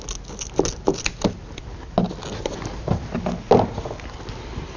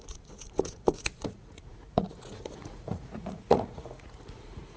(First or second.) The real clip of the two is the first